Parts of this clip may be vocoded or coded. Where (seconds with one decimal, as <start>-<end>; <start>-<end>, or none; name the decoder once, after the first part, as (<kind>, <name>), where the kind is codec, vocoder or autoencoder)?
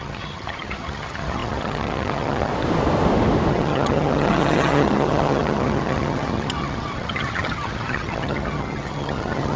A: 0.0-2.5 (vocoder, HiFi-GAN); 3.5-9.6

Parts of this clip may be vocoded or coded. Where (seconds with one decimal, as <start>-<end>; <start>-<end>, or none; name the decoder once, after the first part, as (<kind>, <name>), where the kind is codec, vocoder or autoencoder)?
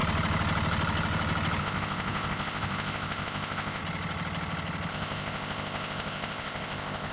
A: 1.6-3.8 (codec, ZipCodec); 4.9-7.1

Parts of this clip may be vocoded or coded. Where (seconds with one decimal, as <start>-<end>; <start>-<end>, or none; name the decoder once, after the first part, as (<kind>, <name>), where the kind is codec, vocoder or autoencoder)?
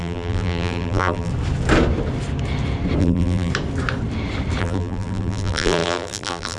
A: 0.0-1.3 (vocoder, BigVGAN v2); 3.0-3.5; 4.6-6.6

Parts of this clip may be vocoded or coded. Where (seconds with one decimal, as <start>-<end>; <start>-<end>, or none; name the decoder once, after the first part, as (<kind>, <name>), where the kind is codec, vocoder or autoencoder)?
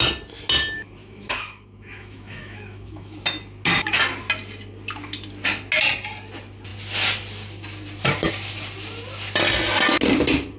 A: 1.0-3.2 (autoencoder, DAC-VAE)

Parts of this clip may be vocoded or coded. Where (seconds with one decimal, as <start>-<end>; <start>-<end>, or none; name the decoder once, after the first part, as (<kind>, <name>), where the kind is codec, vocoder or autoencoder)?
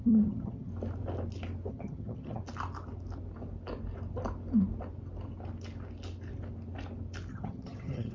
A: 0.0-0.7 (vocoder, HiFi-GAN); 1.7-2.4; 7.3-8.1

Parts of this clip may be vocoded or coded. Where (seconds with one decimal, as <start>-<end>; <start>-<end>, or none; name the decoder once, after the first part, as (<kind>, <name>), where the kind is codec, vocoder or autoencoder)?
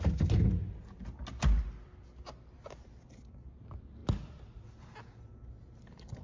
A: none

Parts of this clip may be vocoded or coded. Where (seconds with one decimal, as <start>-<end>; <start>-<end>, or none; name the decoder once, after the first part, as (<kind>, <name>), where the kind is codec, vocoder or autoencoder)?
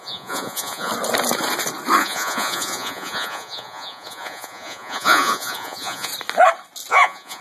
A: 0.0-0.9 (vocoder, Vocos); 2.0-6.1; 6.9-7.4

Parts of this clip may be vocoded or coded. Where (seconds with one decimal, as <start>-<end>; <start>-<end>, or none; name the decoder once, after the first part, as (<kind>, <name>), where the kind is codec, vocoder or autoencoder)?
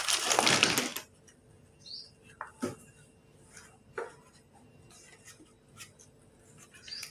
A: none